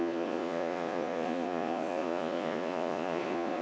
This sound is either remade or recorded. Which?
remade